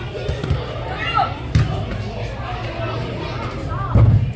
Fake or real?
real